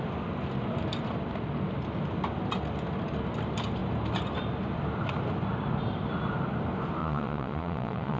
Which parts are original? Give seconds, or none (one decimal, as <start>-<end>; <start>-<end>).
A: 0.0-7.0